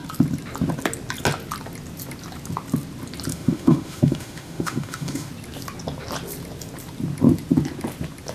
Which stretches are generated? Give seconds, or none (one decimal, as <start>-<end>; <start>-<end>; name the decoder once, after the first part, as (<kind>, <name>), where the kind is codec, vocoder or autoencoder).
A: 3.3-5.3 (autoencoder, DAC-VAE)